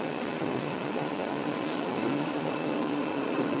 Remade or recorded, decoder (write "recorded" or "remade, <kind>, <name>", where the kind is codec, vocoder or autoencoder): remade, vocoder, Vocos